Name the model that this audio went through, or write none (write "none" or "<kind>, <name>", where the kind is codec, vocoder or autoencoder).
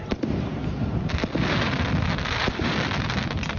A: none